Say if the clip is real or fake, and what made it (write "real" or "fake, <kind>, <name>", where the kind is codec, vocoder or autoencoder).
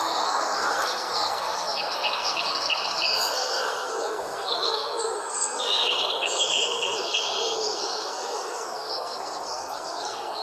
fake, codec, SNAC